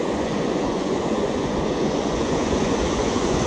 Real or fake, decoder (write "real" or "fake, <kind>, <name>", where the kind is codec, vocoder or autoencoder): fake, vocoder, Vocos